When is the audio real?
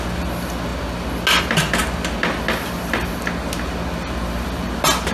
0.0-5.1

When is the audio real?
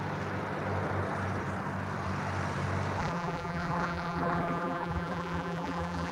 0.0-3.0